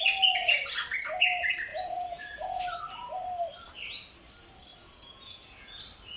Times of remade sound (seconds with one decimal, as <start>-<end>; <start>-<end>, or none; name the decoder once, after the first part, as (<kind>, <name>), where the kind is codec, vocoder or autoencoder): 1.7-2.6 (vocoder, Vocos); 4.7-5.8